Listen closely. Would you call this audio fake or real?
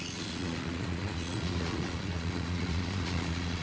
fake